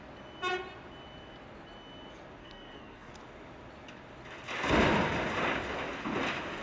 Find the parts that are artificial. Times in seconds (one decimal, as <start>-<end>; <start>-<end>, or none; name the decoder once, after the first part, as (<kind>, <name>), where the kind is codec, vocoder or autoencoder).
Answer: 2.4-3.1 (codec, SNAC)